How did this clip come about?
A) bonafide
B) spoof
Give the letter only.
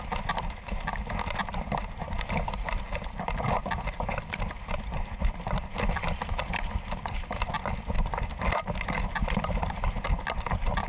A